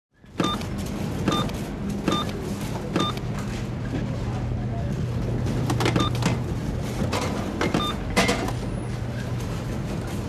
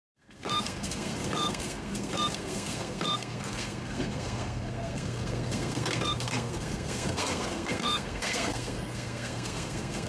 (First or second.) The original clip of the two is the first